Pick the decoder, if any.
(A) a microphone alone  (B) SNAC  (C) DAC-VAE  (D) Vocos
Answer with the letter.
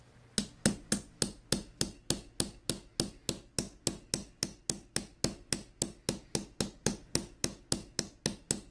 A